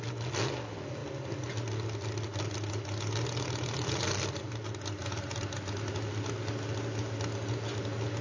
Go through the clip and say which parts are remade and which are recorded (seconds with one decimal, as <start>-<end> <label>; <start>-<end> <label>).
0.0-8.2 recorded